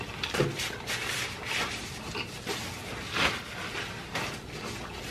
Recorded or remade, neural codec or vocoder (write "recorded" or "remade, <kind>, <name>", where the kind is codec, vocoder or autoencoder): recorded